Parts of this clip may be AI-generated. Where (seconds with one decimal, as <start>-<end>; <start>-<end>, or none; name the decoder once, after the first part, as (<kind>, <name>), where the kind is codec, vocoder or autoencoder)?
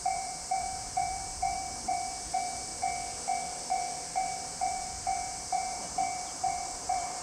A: 0.0-2.7 (vocoder, BigVGAN v2); 3.4-7.2